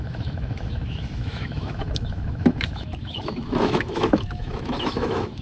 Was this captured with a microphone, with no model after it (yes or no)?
no